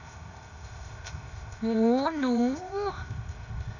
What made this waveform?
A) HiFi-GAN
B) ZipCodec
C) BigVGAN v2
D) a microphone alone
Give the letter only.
B